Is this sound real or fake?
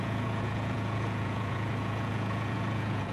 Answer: fake